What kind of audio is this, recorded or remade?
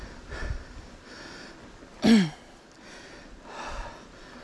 recorded